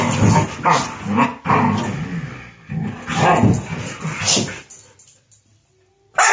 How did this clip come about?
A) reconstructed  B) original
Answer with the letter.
B